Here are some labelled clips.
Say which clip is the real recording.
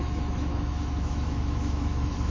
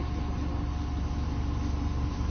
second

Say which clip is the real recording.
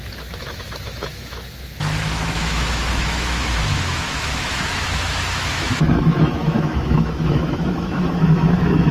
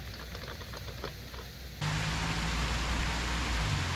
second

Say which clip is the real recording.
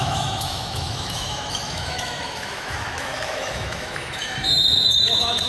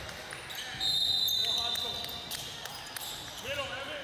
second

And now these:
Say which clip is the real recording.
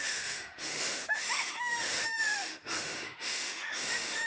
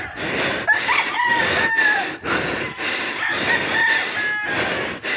second